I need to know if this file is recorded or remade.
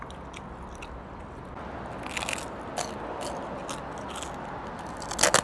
recorded